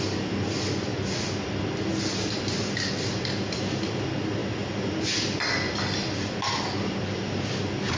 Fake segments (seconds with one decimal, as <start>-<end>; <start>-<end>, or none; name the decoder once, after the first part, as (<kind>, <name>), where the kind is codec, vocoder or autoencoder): none